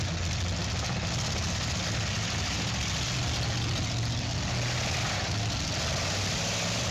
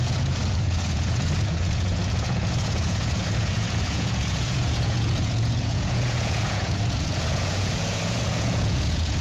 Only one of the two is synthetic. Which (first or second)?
second